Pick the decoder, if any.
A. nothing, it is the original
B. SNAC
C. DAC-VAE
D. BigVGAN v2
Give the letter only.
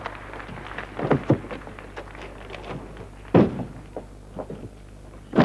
A